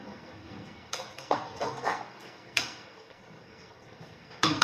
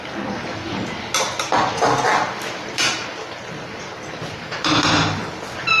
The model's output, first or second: first